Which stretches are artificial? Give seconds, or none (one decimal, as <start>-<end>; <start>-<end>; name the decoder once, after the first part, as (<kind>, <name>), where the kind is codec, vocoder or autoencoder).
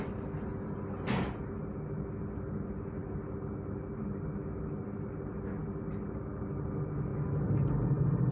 none